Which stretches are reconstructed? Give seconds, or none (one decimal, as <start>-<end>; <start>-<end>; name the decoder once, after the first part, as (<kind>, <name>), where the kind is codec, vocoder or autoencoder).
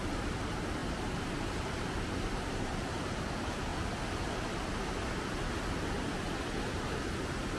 0.0-3.7 (vocoder, BigVGAN v2); 6.6-7.6